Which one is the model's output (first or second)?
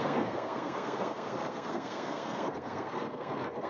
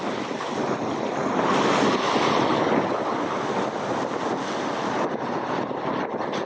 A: first